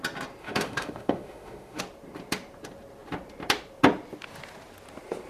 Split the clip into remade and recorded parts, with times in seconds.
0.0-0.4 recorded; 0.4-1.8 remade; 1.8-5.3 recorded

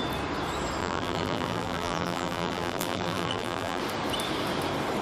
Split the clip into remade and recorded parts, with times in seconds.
0.0-0.8 recorded; 0.8-3.8 remade; 3.8-5.0 recorded

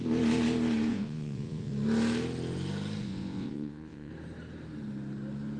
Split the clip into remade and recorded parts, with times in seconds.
0.0-0.9 recorded; 0.9-1.7 remade; 1.7-3.0 recorded; 3.0-4.1 remade; 4.1-5.6 recorded

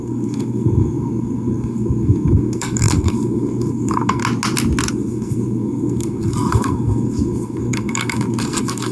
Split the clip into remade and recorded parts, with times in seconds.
0.0-4.2 remade; 4.2-4.9 recorded; 4.9-8.9 remade

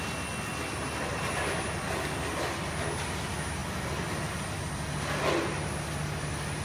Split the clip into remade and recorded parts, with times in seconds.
0.0-6.6 recorded

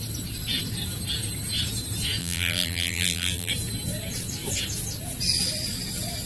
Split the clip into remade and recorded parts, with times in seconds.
0.0-2.2 recorded; 2.2-3.5 remade; 3.5-6.3 recorded

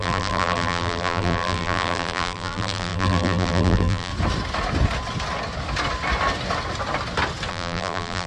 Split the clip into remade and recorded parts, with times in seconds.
0.0-4.1 remade; 4.1-7.5 recorded; 7.5-8.3 remade

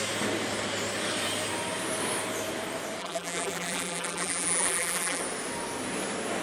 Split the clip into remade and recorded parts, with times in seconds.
0.0-3.0 recorded; 3.0-5.2 remade; 5.2-6.4 recorded